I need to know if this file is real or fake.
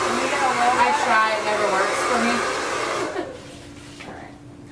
real